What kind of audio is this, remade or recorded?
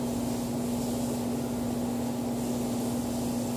recorded